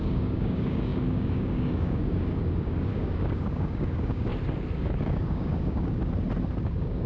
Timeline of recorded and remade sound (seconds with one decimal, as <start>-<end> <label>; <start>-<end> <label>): 0.0-4.3 remade; 4.3-4.8 recorded; 4.8-6.0 remade; 6.0-6.6 recorded; 6.6-7.1 remade

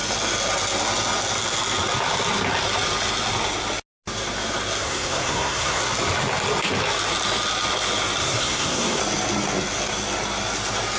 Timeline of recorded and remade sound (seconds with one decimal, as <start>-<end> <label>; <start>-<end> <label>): 0.0-4.8 recorded; 4.8-5.8 remade; 5.8-8.2 recorded; 8.2-9.0 remade; 9.0-11.0 recorded

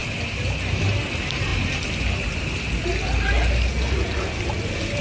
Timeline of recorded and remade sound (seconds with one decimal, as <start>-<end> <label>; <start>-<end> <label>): 0.0-5.0 recorded

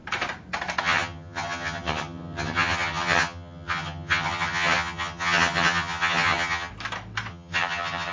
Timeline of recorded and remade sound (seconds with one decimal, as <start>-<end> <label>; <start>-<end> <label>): 0.0-0.8 recorded; 0.8-6.7 remade; 6.7-7.3 recorded; 7.3-8.1 remade

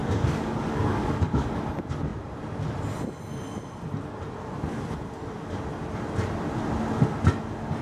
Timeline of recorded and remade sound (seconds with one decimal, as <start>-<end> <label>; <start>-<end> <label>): 0.0-1.6 remade; 1.6-7.8 recorded

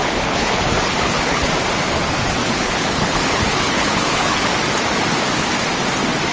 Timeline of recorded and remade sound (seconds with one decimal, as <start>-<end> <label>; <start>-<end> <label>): 0.0-1.5 remade; 1.5-2.4 recorded; 2.4-4.5 remade; 4.5-6.3 recorded

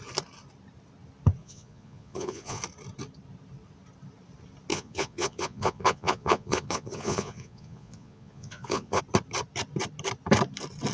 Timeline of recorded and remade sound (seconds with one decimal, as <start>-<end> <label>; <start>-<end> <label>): 0.0-1.4 recorded; 1.4-2.6 remade; 2.6-4.7 recorded; 4.7-9.0 remade; 9.0-10.9 recorded